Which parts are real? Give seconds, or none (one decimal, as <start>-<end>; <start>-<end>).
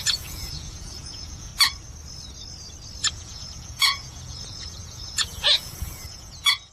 1.5-3.1